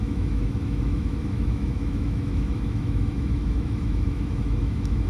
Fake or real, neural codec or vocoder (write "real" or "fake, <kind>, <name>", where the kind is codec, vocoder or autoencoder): fake, autoencoder, DAC-VAE